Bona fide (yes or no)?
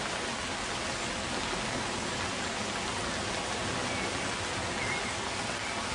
yes